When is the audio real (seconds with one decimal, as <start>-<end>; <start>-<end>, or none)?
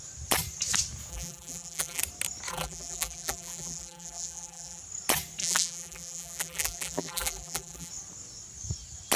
0.0-1.1; 2.0-2.5; 4.8-5.4; 7.9-9.2